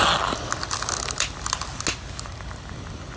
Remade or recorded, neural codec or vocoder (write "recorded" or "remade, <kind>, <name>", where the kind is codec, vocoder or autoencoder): recorded